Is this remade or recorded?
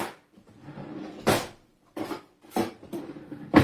remade